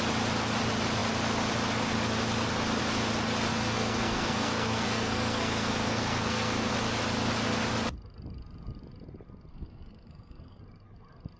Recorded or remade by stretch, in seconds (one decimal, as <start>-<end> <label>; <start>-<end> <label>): 0.0-3.5 recorded; 3.5-6.7 remade; 6.7-9.5 recorded; 9.5-10.6 remade; 10.6-11.4 recorded